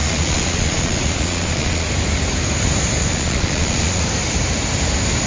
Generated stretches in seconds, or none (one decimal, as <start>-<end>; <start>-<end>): 0.0-1.9; 3.0-4.0